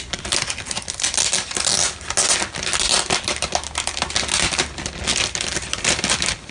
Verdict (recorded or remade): recorded